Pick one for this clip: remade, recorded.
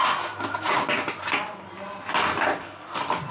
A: recorded